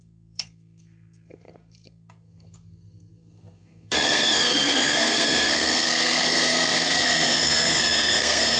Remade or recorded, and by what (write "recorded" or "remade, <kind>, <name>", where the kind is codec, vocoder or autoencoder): remade, codec, SNAC